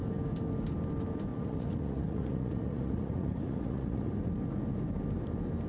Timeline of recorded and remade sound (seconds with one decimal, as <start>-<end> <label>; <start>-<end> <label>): 0.0-1.3 recorded; 1.3-4.1 remade; 4.1-5.7 recorded